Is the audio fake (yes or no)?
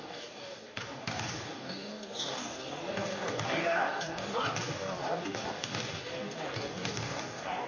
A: yes